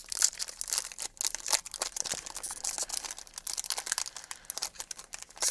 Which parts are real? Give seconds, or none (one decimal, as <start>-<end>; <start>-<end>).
0.0-5.5